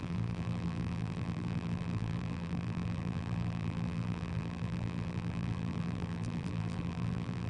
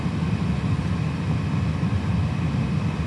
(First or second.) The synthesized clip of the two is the first